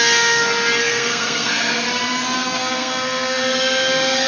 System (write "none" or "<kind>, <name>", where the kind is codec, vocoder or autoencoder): codec, SNAC